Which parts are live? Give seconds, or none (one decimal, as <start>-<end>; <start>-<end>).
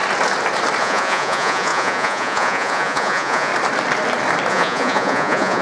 0.0-0.8; 3.5-4.5